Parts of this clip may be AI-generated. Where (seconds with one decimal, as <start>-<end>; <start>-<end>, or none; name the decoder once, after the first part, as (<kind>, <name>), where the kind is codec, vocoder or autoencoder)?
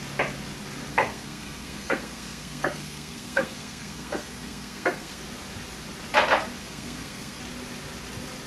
0.9-5.2 (codec, SNAC); 6.6-7.4